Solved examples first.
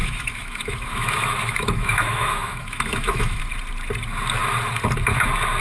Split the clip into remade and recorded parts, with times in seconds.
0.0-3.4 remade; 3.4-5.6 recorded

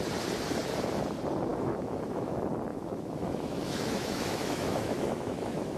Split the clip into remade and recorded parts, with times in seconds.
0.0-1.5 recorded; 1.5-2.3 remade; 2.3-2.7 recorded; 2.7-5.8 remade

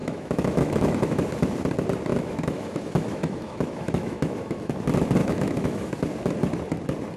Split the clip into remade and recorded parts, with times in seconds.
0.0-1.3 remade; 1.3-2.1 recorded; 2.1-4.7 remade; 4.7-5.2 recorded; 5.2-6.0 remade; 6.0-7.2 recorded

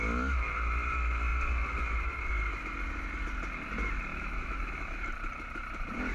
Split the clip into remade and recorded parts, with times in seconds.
0.0-4.1 recorded; 4.1-5.0 remade; 5.0-6.1 recorded

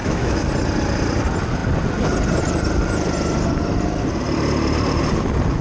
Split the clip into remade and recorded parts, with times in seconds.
0.0-0.5 remade; 0.5-5.6 recorded